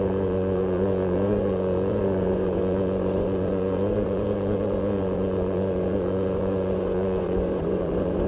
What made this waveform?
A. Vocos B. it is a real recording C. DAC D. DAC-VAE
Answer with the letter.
A